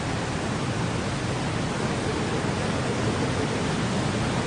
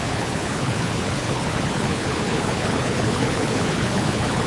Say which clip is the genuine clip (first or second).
first